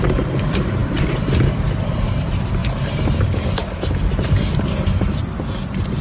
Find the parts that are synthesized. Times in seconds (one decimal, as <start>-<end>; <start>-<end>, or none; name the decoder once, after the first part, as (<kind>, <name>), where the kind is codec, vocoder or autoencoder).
0.0-2.6 (vocoder, BigVGAN v2); 4.6-6.0